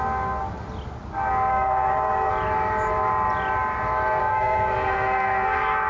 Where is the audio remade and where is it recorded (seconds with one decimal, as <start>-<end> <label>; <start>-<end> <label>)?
0.0-1.5 recorded; 1.5-2.3 remade; 2.3-4.2 recorded; 4.2-5.9 remade

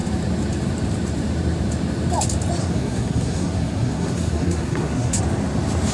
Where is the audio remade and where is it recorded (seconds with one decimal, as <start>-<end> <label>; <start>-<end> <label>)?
0.0-2.6 recorded; 2.6-5.2 remade; 5.2-5.9 recorded

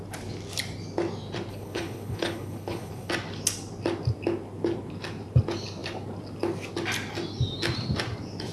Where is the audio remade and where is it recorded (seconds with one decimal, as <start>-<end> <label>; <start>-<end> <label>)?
0.0-1.5 recorded; 1.5-3.1 remade; 3.1-8.5 recorded

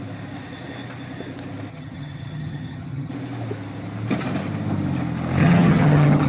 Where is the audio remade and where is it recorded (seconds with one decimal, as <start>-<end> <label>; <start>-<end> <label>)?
0.0-1.7 recorded; 1.7-3.1 remade; 3.1-5.4 recorded; 5.4-6.3 remade

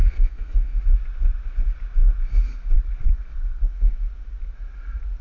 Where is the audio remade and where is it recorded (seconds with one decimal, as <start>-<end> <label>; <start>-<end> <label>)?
0.0-0.8 remade; 0.8-5.2 recorded

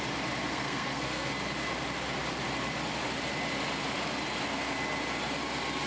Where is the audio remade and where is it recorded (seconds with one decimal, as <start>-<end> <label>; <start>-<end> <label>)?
0.0-0.5 recorded; 0.5-1.3 remade; 1.3-5.9 recorded

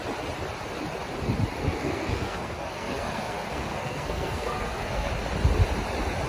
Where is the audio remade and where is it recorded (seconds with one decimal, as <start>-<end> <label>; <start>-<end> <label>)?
0.0-1.6 recorded; 1.6-5.1 remade; 5.1-6.3 recorded

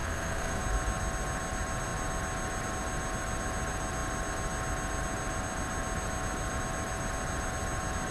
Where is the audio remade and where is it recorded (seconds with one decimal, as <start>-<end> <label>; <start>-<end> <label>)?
0.0-0.6 remade; 0.6-8.1 recorded